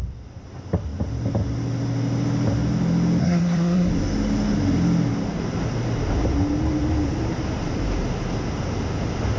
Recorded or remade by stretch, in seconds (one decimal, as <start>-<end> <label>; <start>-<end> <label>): 0.0-3.2 recorded; 3.2-3.9 remade; 3.9-9.4 recorded